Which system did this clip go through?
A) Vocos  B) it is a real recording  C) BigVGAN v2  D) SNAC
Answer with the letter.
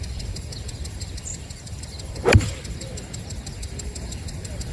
C